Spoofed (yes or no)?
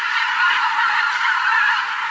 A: yes